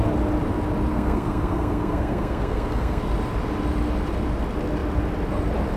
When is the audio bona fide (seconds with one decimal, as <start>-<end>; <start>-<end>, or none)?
0.0-0.9; 3.0-5.8